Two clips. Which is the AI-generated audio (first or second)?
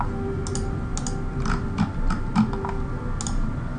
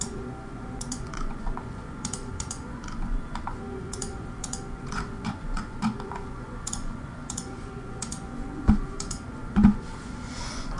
second